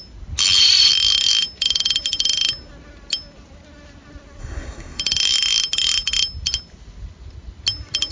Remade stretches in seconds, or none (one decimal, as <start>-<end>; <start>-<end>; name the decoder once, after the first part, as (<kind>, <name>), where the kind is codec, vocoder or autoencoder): 4.4-5.0 (codec, SNAC)